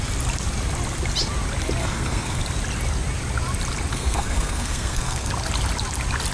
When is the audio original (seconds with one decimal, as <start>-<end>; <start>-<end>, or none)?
0.0-1.8; 2.4-3.9; 5.3-6.3